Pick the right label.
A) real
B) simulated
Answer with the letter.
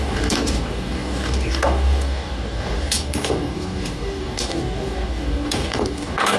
B